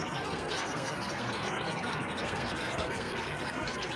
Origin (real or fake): fake